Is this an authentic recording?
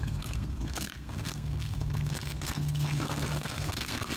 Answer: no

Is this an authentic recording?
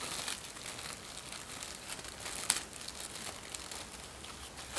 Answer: yes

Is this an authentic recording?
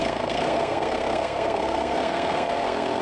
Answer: no